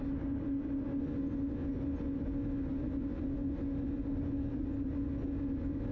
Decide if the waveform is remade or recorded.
recorded